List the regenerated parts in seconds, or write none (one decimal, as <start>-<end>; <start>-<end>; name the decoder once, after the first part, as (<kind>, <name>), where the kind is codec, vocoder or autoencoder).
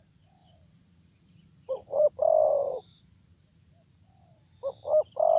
0.4-2.1 (vocoder, Vocos); 2.6-3.8